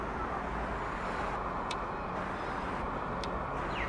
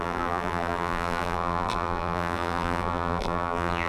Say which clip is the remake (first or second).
second